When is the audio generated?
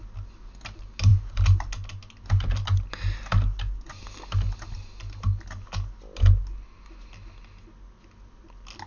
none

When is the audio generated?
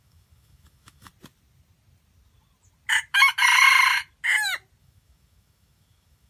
0.0-1.1; 4.8-6.3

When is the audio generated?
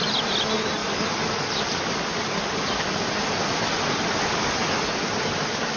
none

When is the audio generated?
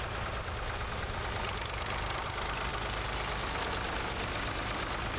none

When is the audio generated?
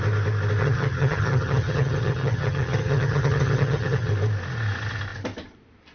0.6-4.1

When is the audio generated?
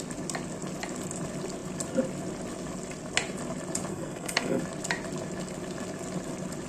3.9-4.6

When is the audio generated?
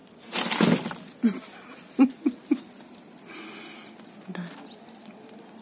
none